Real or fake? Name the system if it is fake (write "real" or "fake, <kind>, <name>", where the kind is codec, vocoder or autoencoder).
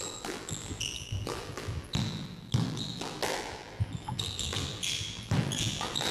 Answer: fake, vocoder, BigVGAN v2